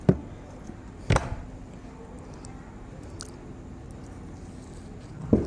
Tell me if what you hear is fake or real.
real